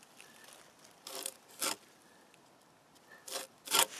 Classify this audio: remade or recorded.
recorded